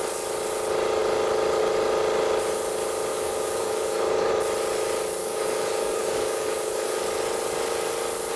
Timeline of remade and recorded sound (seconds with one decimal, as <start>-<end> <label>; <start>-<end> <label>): 0.0-3.1 recorded; 3.1-4.3 remade; 4.3-5.2 recorded; 5.2-7.0 remade; 7.0-8.4 recorded